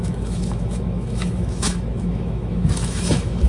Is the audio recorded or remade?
remade